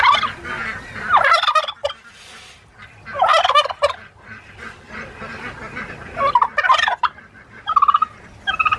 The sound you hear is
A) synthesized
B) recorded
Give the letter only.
B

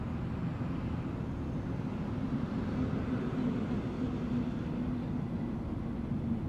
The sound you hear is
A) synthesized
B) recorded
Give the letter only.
B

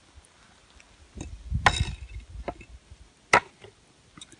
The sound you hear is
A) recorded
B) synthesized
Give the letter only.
A